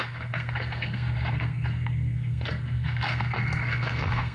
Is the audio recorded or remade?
remade